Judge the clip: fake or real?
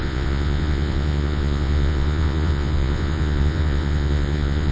fake